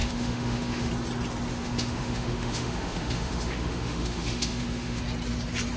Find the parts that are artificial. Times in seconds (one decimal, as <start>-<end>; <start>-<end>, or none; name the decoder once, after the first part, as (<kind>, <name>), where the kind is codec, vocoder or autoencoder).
0.0-0.9 (autoencoder, DAC-VAE); 1.5-5.0